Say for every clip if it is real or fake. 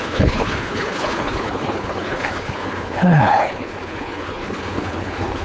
fake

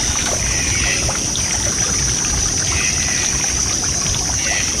real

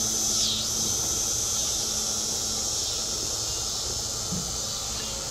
real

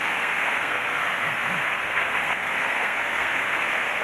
fake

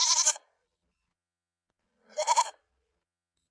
fake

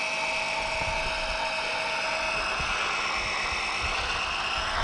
real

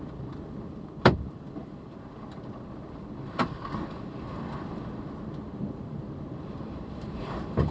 fake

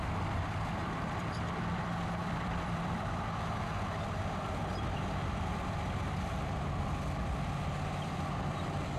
fake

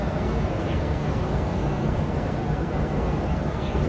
fake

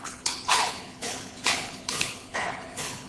fake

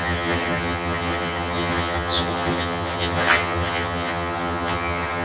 fake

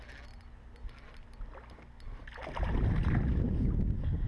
real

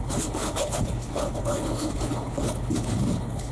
fake